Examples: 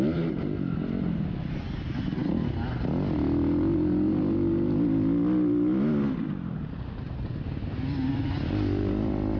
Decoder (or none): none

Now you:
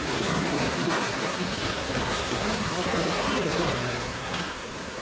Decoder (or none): codec, SNAC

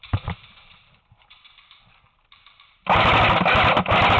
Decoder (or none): none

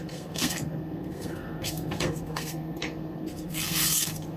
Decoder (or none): codec, SNAC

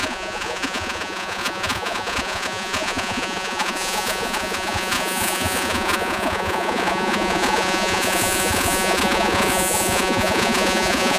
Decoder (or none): vocoder, Vocos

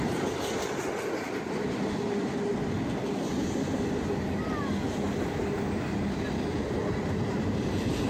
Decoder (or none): none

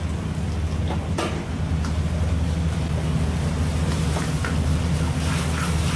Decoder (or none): none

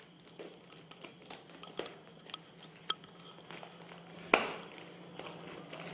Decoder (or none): none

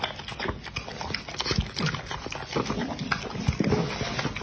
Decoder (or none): none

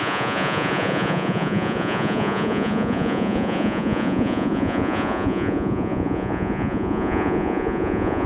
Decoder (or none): vocoder, Vocos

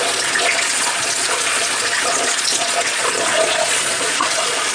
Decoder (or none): vocoder, Vocos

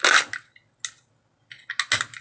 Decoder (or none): none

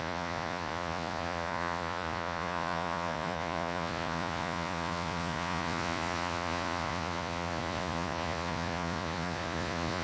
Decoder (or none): vocoder, Vocos